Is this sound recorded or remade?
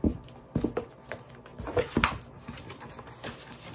recorded